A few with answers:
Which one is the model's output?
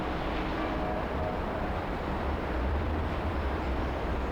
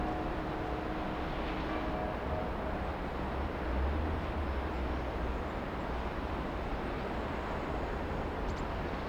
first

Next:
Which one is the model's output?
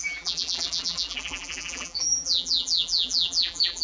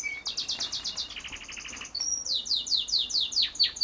first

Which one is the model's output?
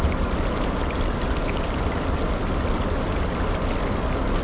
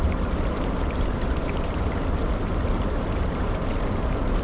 second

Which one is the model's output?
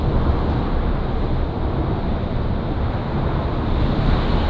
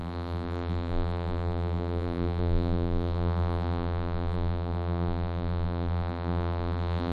second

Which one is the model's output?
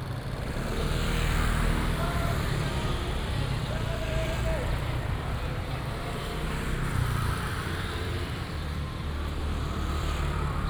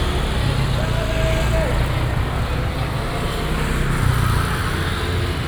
first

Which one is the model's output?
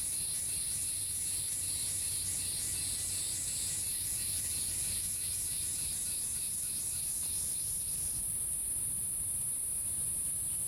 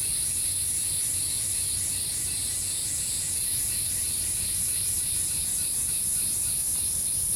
second